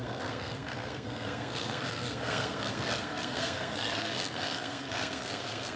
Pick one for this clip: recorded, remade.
remade